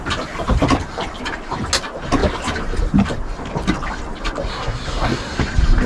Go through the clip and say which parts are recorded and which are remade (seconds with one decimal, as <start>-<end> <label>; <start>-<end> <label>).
0.0-4.5 recorded; 4.5-5.4 remade; 5.4-5.9 recorded